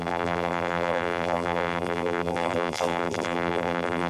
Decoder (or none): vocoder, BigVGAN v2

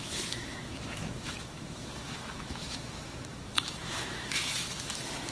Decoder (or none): autoencoder, DAC-VAE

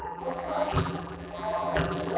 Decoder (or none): vocoder, BigVGAN v2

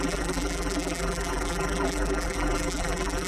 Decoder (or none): vocoder, BigVGAN v2